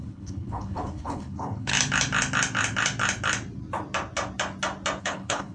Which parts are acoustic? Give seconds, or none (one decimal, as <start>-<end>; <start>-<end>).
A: 1.7-5.0